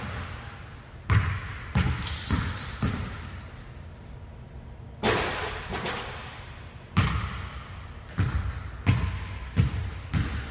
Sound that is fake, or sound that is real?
real